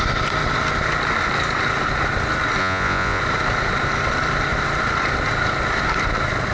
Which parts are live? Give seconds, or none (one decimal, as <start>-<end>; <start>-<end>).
0.0-2.6; 3.2-6.5